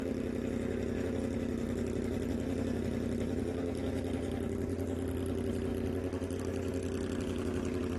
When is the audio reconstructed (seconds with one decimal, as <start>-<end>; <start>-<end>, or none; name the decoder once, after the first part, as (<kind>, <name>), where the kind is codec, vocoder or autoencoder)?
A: none